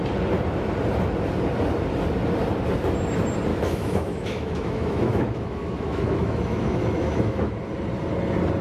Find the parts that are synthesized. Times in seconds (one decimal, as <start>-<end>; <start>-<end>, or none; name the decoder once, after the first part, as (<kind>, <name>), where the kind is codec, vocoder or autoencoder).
3.5-7.5 (autoencoder, DAC-VAE)

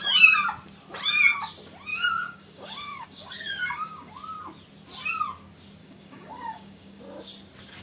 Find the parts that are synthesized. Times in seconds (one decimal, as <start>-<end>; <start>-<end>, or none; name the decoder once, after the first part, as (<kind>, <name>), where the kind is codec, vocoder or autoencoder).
1.9-4.1 (codec, DAC); 5.8-7.0

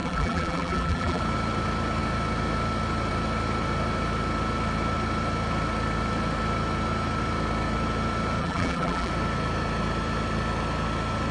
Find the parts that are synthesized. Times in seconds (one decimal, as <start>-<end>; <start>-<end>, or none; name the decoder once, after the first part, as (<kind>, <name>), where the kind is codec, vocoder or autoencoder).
0.0-1.2 (vocoder, BigVGAN v2); 8.4-9.1

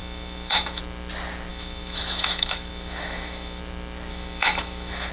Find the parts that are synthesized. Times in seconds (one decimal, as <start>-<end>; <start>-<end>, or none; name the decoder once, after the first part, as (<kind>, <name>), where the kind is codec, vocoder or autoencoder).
0.0-0.8 (autoencoder, DAC-VAE); 1.5-3.6; 4.1-5.1

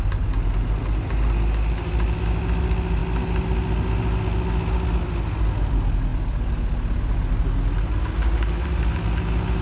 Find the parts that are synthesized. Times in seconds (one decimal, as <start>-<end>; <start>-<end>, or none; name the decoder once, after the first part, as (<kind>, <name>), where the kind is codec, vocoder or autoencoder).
none

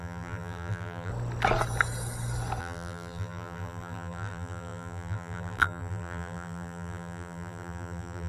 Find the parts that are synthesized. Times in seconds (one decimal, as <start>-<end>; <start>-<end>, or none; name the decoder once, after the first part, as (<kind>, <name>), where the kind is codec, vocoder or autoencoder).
0.0-1.1 (vocoder, BigVGAN v2); 2.6-8.3